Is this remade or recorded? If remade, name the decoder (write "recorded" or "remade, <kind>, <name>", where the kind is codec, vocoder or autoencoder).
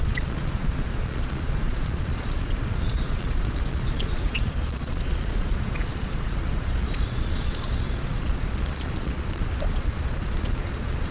remade, vocoder, Vocos